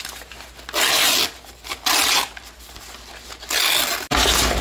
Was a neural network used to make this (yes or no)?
no